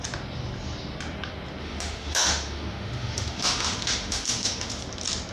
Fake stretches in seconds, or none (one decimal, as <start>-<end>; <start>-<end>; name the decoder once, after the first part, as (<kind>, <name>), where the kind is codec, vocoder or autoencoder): 1.6-4.8 (autoencoder, DAC-VAE)